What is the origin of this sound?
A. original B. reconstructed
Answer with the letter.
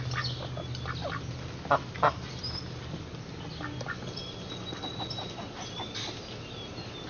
A